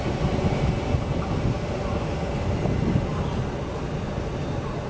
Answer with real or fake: real